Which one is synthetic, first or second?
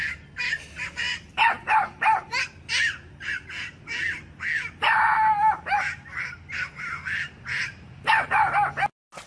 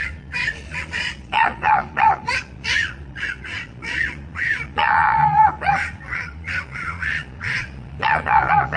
second